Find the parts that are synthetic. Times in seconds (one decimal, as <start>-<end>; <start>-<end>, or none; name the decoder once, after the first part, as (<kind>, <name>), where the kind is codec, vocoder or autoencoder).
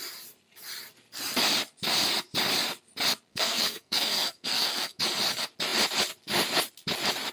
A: 3.3-5.0 (codec, SNAC)